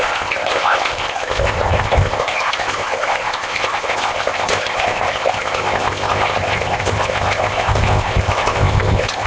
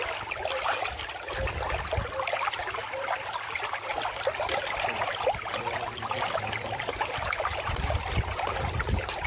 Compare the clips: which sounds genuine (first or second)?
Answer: second